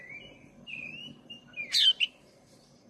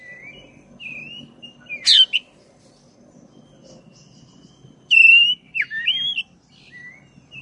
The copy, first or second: first